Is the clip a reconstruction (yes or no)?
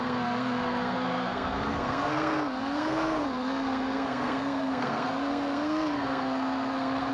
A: yes